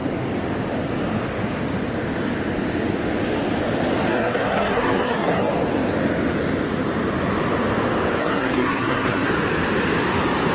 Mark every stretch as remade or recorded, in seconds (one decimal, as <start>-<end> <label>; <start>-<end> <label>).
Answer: 0.0-4.1 recorded; 4.1-5.5 remade; 5.5-8.2 recorded; 8.2-9.3 remade; 9.3-10.5 recorded